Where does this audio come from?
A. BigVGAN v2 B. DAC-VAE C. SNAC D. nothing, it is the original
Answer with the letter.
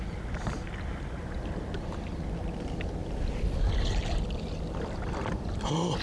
D